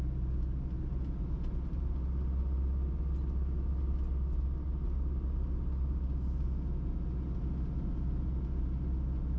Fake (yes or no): no